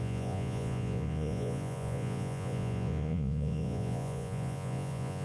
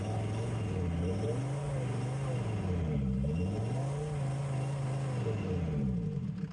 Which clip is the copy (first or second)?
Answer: first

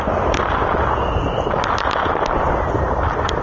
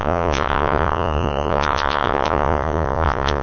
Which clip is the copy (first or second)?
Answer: second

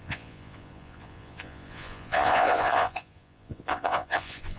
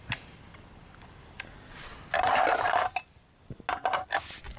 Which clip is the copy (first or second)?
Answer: first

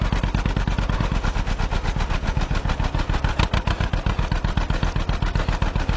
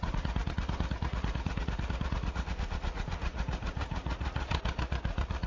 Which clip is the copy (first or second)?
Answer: second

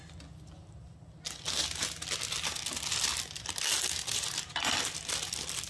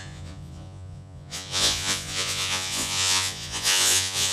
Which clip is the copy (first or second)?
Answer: second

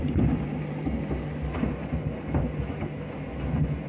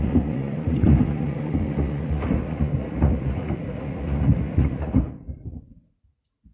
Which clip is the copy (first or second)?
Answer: second